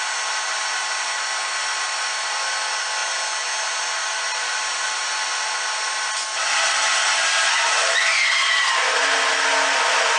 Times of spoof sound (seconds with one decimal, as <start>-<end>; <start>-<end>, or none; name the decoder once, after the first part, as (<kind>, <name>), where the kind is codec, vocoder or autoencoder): none